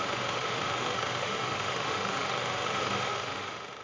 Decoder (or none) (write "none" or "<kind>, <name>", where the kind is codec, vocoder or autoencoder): autoencoder, DAC-VAE